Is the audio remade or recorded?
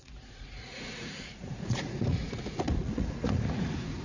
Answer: remade